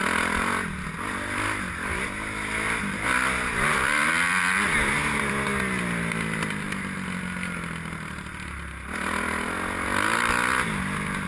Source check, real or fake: real